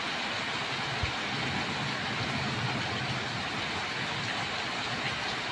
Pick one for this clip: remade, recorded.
recorded